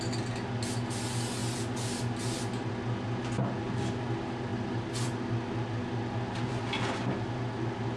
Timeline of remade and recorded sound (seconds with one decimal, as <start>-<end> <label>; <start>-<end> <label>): 0.0-8.0 recorded